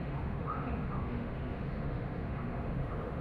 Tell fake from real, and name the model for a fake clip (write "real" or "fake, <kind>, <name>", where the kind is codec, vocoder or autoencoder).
fake, autoencoder, DAC-VAE